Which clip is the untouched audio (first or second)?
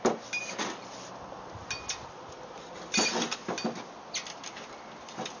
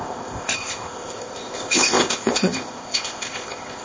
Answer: first